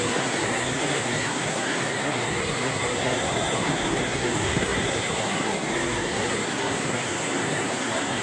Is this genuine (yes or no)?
no